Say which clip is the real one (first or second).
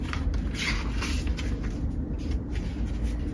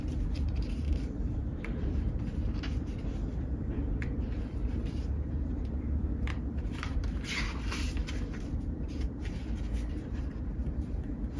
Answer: first